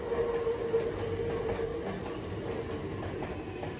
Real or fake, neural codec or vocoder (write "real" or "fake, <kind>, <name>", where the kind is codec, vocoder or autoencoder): real